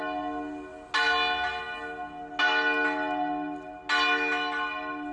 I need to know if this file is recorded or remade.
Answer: recorded